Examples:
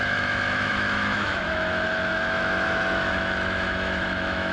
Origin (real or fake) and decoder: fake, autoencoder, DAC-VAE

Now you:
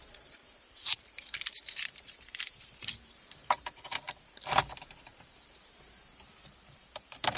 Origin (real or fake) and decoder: fake, vocoder, BigVGAN v2